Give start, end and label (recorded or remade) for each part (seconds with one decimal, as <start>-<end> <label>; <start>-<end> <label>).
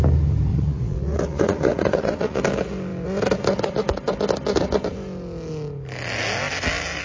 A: 0.0-0.5 recorded; 0.5-2.4 remade; 2.4-7.0 recorded